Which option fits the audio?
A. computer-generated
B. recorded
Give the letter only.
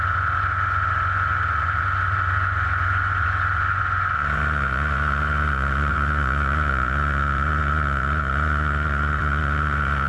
A